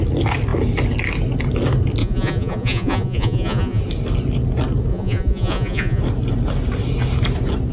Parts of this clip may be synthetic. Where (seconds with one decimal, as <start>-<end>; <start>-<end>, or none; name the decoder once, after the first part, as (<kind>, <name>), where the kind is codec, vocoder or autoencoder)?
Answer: 2.0-3.8 (vocoder, Vocos); 4.9-6.0